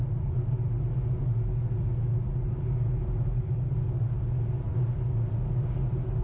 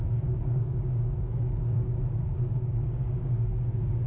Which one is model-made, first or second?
second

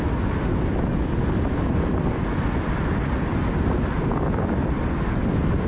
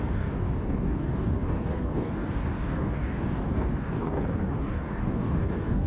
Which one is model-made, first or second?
second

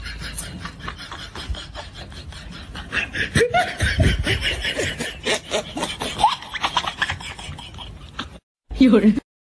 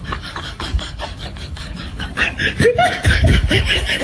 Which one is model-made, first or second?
second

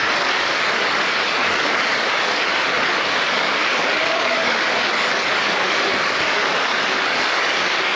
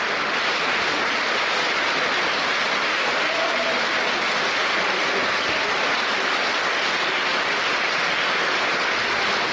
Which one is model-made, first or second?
first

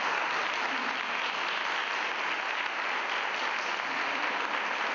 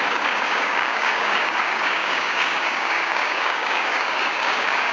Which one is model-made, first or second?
second